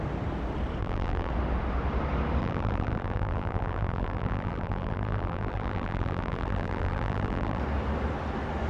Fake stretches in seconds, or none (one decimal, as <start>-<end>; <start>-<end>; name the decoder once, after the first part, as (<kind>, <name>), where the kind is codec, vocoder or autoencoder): 0.8-1.3 (vocoder, BigVGAN v2); 2.4-7.6